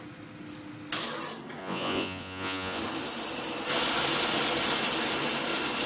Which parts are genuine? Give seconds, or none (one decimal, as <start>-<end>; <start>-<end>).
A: 0.0-1.6; 2.8-5.9